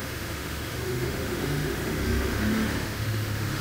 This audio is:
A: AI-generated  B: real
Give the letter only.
A